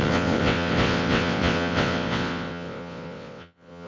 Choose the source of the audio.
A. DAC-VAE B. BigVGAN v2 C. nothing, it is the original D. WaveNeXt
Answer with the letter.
D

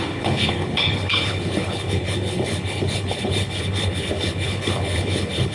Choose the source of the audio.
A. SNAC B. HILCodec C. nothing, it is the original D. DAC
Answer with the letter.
B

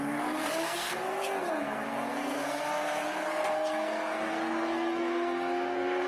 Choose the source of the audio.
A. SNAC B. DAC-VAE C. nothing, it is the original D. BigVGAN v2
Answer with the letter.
A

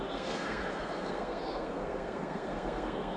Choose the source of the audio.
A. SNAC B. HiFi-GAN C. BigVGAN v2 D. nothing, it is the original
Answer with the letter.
A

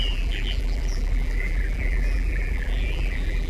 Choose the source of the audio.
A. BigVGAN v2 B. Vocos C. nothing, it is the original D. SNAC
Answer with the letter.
A